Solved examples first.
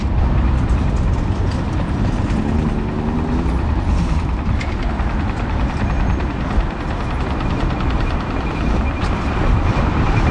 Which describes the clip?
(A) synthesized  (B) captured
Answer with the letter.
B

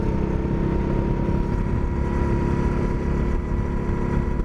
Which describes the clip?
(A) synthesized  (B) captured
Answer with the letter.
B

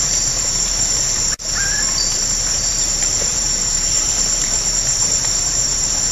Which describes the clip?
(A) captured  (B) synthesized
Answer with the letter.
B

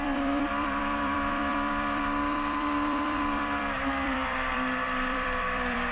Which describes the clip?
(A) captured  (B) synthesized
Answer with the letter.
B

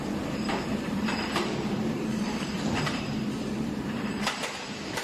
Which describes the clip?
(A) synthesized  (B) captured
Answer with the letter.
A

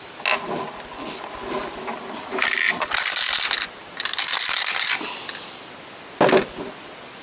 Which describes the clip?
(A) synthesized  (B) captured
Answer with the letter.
B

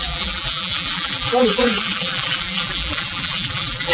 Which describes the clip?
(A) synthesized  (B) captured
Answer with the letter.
A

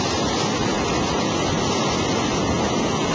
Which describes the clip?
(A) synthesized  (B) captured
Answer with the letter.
B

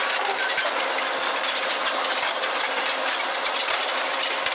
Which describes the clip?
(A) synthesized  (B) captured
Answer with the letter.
B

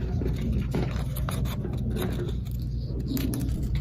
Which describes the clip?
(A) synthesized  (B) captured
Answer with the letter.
B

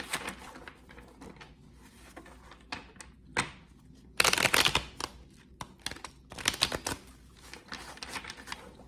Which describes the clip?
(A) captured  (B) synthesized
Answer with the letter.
A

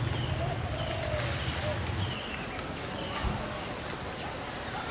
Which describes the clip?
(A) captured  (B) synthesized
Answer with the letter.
A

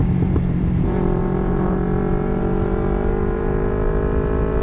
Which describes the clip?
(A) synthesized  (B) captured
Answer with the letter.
A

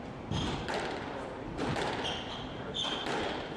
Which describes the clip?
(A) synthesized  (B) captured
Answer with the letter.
A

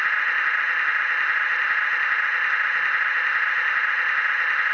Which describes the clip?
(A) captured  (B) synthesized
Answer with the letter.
A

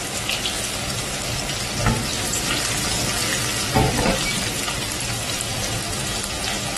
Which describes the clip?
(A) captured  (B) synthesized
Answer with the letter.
A